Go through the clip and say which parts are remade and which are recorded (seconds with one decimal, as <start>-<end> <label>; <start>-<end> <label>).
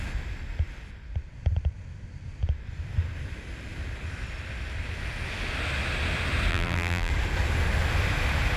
0.0-6.5 recorded; 6.5-7.1 remade; 7.1-8.6 recorded